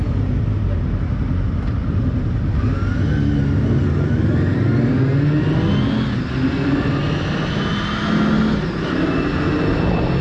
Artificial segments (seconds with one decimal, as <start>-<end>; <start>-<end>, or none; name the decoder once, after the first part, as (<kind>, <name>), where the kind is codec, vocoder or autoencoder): none